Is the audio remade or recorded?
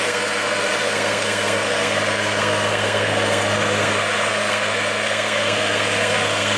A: remade